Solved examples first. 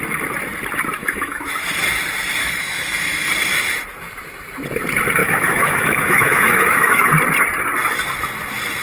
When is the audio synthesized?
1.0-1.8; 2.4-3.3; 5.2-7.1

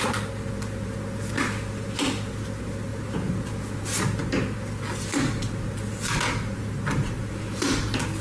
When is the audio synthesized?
none

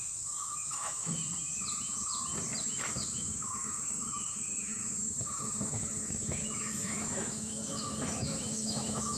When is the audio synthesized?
0.0-1.2; 2.6-9.2

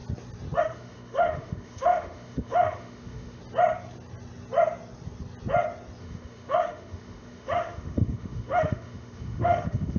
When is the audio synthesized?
0.6-3.4; 6.0-10.0

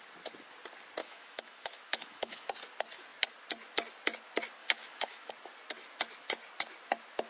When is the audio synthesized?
1.0-2.5; 4.6-5.3